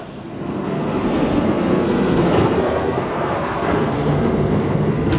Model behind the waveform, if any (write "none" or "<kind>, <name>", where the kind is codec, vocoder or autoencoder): codec, SNAC